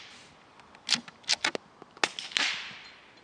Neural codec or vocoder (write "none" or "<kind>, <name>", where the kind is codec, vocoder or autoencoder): none